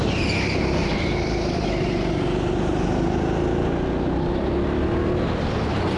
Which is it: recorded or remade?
recorded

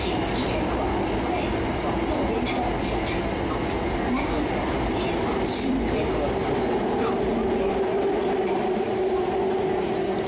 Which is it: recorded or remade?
recorded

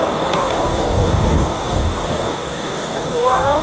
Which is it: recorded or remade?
remade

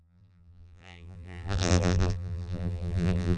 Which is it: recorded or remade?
remade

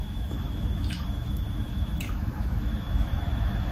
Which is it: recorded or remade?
remade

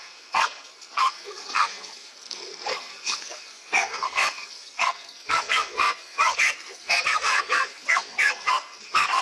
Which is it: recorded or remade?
remade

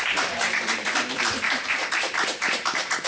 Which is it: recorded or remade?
remade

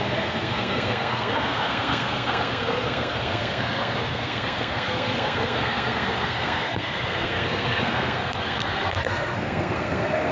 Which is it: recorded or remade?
remade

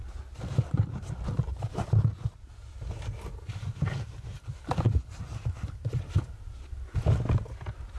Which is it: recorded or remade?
recorded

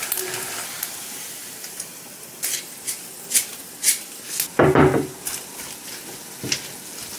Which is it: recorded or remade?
recorded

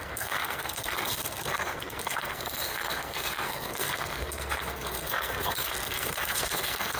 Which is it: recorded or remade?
remade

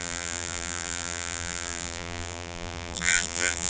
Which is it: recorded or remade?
remade